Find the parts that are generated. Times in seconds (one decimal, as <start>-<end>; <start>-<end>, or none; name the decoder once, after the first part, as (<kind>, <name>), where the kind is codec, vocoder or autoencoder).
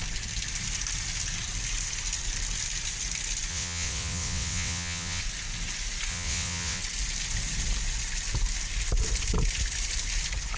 3.5-5.2 (vocoder, WaveNeXt); 6.1-6.8